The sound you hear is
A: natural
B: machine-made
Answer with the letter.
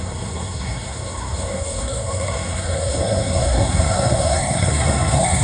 B